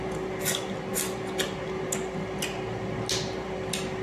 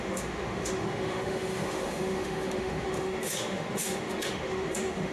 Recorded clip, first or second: first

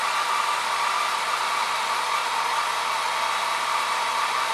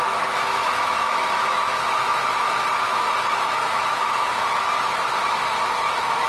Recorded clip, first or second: first